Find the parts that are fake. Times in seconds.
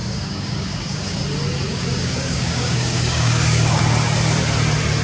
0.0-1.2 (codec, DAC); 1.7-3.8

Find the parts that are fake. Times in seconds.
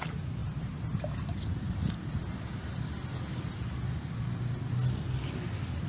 0.4-2.2 (vocoder, BigVGAN v2); 3.3-4.2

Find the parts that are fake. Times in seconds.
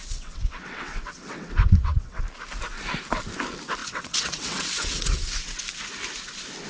0.0-2.2 (vocoder, WaveNeXt); 3.8-5.6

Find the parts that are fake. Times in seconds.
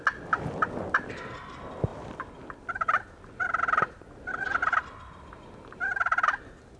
none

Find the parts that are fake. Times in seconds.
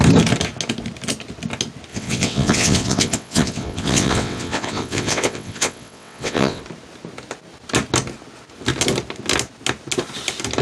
1.9-6.6 (vocoder, WaveNeXt)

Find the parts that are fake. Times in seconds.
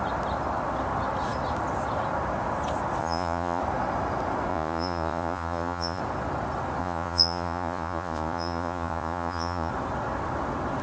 3.0-3.6 (vocoder, Vocos); 4.5-6.0; 6.8-9.7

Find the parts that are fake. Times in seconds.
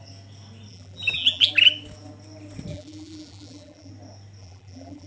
0.7-1.5 (vocoder, BigVGAN v2); 2.7-3.9; 4.4-5.1